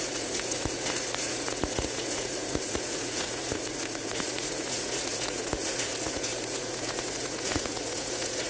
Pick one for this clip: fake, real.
fake